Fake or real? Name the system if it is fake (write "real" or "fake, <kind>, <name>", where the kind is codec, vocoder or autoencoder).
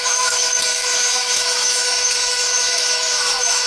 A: fake, autoencoder, DAC-VAE